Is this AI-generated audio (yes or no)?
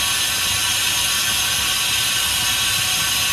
no